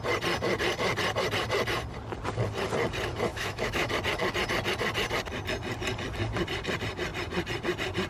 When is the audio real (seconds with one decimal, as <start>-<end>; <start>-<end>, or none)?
0.0-3.3; 3.9-8.1